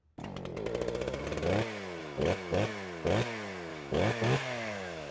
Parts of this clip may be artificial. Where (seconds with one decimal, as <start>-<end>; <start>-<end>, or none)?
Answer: 2.0-2.7; 3.7-5.1